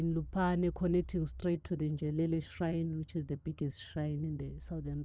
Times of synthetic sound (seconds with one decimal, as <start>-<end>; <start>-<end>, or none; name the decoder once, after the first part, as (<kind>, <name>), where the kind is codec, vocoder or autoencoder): 1.4-4.4 (vocoder, HiFi-GAN)

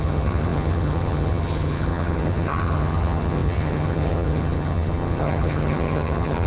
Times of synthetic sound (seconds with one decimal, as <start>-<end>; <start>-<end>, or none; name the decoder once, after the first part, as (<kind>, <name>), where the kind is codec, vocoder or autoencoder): 0.0-6.5 (vocoder, HiFi-GAN)

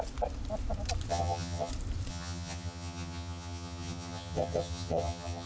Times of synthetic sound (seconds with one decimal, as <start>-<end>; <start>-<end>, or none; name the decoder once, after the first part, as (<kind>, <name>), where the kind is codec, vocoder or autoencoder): 1.1-1.7 (vocoder, HiFi-GAN); 2.1-5.5